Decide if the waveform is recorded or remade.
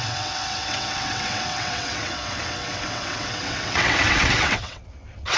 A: remade